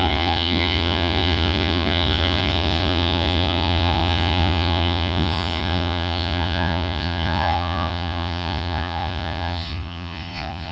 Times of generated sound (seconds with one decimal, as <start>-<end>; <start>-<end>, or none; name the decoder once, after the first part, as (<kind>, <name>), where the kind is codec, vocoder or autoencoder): 0.0-10.7 (vocoder, Vocos)